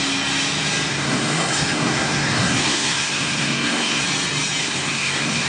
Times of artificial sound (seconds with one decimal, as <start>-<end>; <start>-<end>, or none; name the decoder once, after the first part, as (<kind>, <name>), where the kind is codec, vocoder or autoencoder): 0.9-4.0 (codec, SNAC); 4.6-5.5